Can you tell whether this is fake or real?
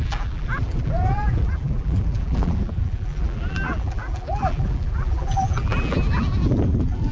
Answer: fake